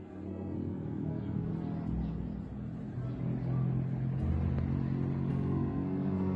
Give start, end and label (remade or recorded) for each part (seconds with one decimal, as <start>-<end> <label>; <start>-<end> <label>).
0.0-1.5 remade; 1.5-5.3 recorded; 5.3-6.4 remade